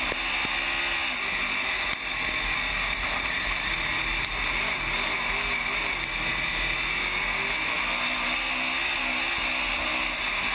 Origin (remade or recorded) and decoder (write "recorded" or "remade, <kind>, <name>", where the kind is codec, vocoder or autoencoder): recorded